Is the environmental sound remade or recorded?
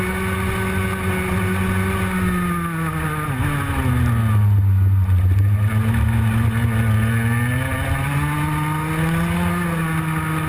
recorded